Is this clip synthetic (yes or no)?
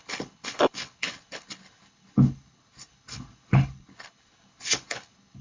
yes